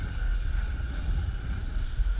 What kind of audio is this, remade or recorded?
remade